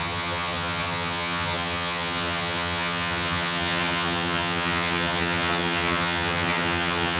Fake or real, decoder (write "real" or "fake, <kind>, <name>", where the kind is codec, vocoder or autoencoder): fake, vocoder, HiFi-GAN